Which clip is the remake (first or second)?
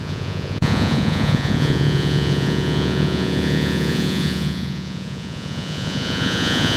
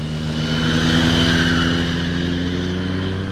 first